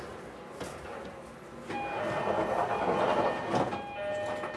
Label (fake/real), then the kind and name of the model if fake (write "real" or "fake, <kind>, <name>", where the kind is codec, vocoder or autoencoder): real